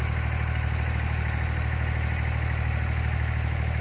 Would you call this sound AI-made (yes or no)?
no